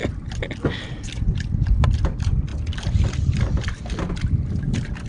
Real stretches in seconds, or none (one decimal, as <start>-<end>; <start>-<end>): 0.0-5.1